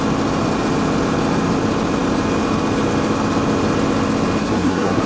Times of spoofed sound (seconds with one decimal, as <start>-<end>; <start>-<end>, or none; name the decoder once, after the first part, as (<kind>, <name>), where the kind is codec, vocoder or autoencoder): 4.4-5.1 (codec, SNAC)